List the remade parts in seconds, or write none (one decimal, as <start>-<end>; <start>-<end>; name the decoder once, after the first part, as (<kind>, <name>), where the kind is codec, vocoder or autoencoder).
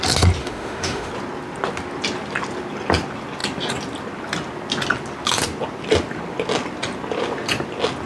0.4-1.1 (autoencoder, DAC-VAE)